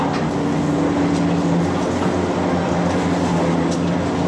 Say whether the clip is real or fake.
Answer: real